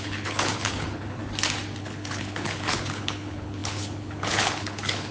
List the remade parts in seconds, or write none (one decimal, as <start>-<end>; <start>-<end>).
0.0-1.2; 1.8-5.1